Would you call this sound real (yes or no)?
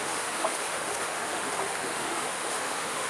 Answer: no